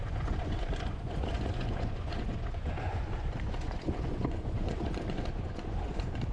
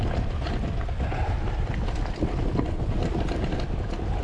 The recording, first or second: second